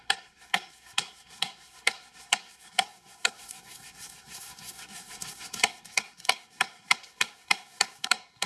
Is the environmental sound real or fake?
fake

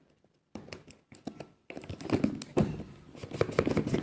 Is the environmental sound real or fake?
real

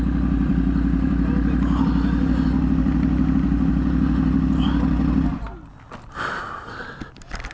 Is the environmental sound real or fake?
real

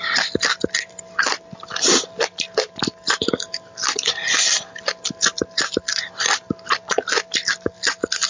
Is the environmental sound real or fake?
real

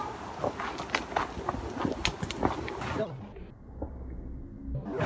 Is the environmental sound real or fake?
real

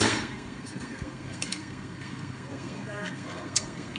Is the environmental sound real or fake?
fake